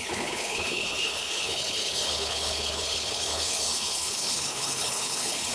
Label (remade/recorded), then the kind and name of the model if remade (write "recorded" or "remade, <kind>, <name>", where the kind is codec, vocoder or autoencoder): remade, codec, HILCodec